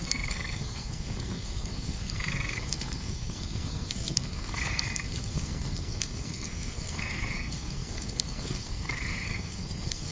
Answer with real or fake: fake